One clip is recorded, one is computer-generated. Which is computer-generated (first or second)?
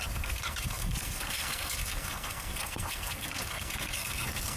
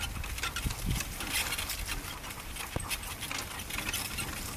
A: first